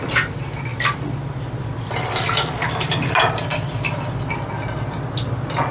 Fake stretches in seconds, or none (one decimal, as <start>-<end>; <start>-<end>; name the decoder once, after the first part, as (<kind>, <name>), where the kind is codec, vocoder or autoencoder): none